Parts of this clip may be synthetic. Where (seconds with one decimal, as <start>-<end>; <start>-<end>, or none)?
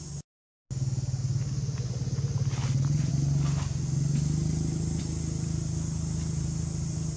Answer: none